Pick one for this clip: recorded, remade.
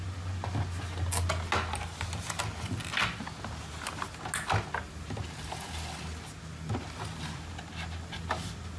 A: recorded